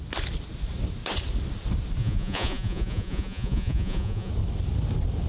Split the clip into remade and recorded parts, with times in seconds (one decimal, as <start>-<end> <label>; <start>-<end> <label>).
0.0-2.0 recorded; 2.0-4.3 remade; 4.3-5.3 recorded